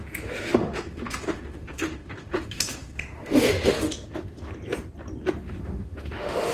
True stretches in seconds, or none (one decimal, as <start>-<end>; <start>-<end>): 4.5-5.4